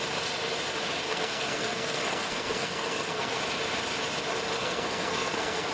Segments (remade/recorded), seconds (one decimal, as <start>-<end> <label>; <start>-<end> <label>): 0.0-1.1 recorded; 1.1-3.4 remade; 3.4-4.6 recorded; 4.6-5.7 remade